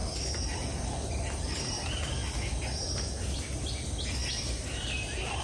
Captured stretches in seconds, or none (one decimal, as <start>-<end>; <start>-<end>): 0.0-5.4